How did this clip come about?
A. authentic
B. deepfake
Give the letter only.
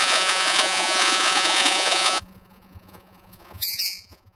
B